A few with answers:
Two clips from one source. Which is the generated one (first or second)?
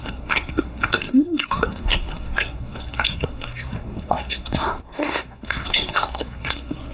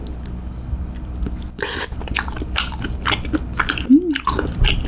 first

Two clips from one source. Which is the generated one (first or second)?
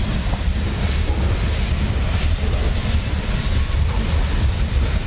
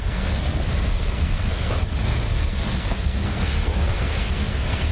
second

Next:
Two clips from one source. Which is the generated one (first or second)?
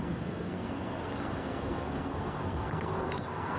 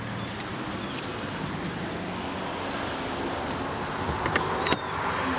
first